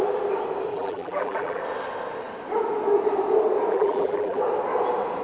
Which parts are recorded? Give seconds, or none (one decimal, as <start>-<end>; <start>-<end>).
0.0-0.7; 1.6-3.7; 4.4-5.2